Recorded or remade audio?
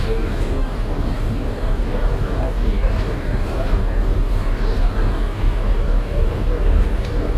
remade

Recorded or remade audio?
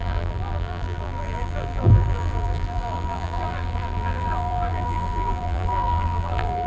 remade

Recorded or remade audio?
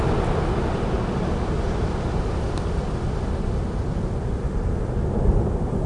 recorded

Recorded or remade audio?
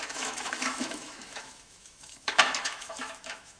remade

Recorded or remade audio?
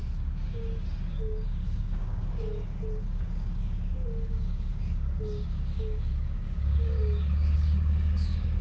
remade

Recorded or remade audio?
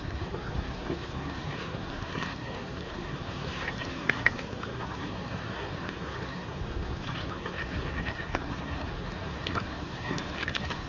remade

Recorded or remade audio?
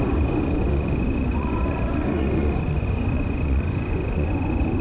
remade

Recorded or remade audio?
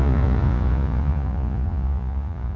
remade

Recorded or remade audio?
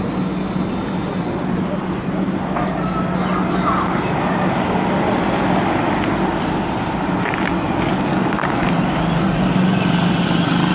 recorded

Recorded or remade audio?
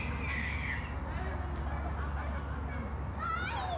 recorded